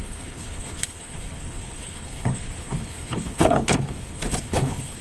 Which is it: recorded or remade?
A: remade